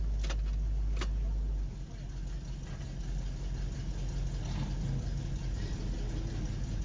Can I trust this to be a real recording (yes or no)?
yes